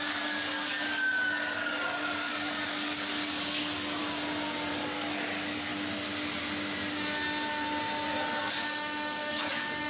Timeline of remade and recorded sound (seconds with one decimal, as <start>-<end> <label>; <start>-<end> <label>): 0.0-4.0 remade; 4.0-4.7 recorded; 4.7-5.7 remade; 5.7-8.4 recorded; 8.4-9.9 remade